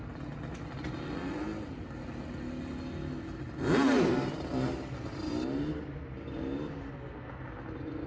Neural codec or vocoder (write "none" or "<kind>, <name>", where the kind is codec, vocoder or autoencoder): none